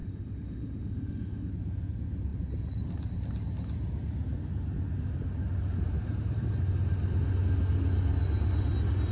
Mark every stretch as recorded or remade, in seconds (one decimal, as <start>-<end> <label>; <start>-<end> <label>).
0.0-1.5 remade; 1.5-9.1 recorded